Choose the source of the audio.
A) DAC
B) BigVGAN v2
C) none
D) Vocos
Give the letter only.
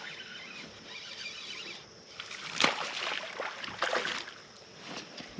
C